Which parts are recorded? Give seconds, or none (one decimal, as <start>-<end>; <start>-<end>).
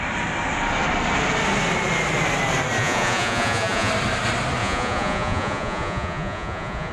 0.0-2.8; 3.9-4.6